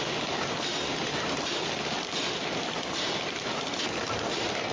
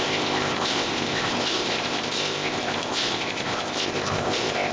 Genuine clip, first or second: first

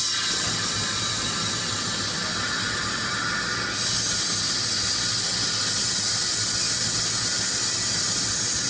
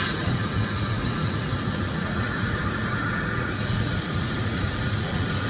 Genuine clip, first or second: first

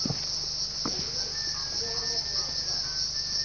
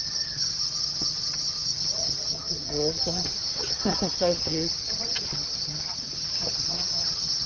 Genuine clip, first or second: first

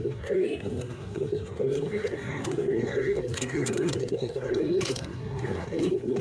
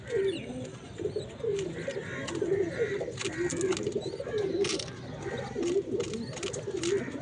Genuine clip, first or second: second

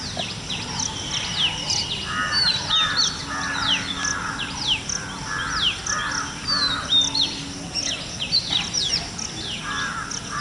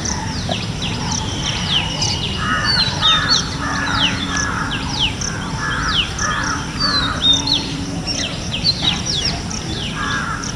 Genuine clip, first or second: first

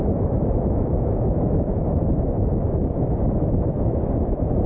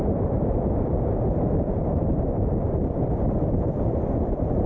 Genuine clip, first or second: second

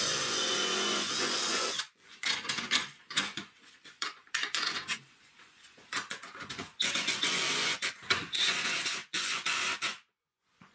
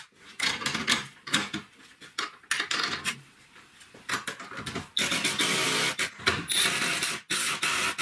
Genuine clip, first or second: second